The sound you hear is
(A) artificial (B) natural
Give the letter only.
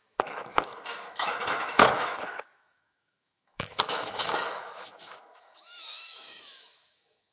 A